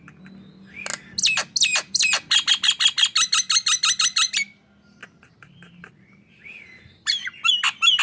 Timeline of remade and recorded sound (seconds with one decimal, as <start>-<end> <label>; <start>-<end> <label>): 0.0-1.7 recorded; 1.7-2.5 remade; 2.5-5.0 recorded; 5.0-7.5 remade; 7.5-8.0 recorded